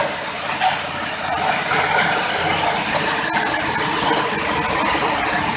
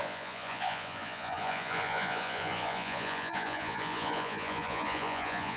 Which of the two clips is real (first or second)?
first